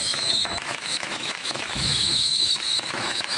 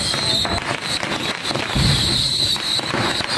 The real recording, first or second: second